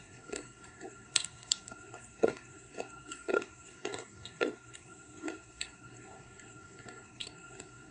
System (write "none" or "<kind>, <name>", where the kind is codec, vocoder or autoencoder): codec, SNAC